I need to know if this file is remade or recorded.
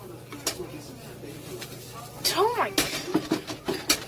recorded